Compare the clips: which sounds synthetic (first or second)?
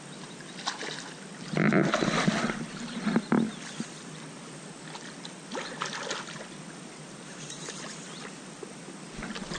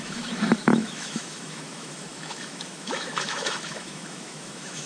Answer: second